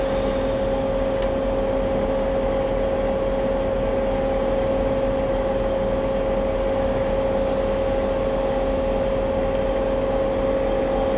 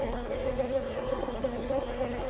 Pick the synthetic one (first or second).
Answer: second